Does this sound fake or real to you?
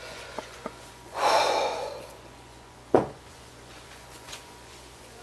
fake